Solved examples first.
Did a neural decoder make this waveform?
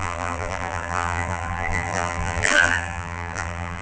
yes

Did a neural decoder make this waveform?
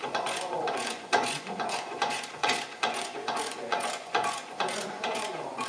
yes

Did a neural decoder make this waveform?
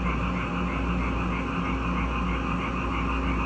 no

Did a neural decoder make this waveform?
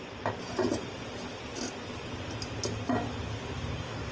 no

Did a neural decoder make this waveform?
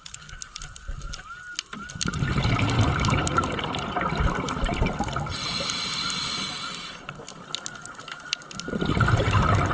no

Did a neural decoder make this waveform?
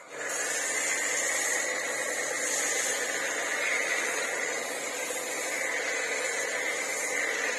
no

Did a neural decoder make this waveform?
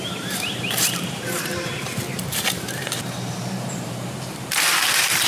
yes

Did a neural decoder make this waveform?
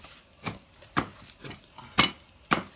no